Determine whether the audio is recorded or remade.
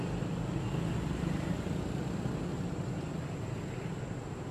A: recorded